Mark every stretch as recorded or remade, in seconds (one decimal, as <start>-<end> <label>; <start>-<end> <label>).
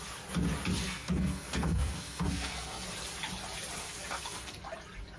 0.0-0.8 recorded; 0.8-2.9 remade; 2.9-3.8 recorded; 3.8-4.6 remade; 4.6-5.2 recorded